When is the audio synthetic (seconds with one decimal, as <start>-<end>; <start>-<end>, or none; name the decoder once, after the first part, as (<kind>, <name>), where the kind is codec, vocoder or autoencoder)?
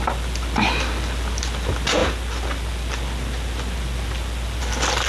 none